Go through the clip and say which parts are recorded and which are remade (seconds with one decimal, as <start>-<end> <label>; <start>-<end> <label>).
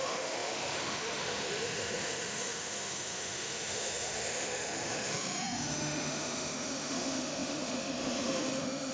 0.0-8.9 remade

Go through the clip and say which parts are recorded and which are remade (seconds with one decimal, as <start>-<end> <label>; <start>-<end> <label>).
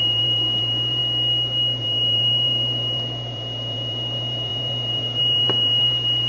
0.0-1.0 remade; 1.0-1.8 recorded; 1.8-6.3 remade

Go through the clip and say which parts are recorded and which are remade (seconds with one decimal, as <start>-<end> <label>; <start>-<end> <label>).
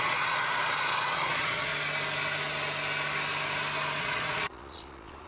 0.0-1.7 remade; 1.7-4.0 recorded; 4.0-5.3 remade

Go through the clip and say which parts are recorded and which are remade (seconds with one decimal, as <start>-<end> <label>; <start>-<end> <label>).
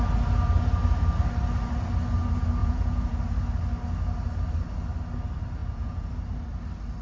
0.0-2.6 recorded; 2.6-3.1 remade; 3.1-5.6 recorded; 5.6-6.1 remade; 6.1-7.0 recorded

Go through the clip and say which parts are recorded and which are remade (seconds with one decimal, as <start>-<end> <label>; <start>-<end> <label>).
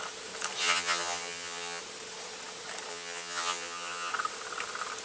0.0-0.6 recorded; 0.6-1.8 remade; 1.8-2.9 recorded; 2.9-4.1 remade; 4.1-5.0 recorded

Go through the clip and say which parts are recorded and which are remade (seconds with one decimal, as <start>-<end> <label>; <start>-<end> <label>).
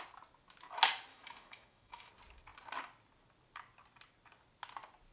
0.0-1.1 recorded; 1.1-2.1 remade; 2.1-5.1 recorded